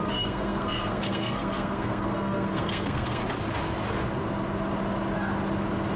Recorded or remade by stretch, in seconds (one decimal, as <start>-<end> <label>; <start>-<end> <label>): 0.0-3.2 remade; 3.2-6.0 recorded